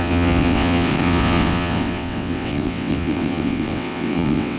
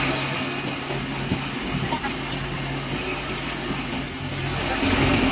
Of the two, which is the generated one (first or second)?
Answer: first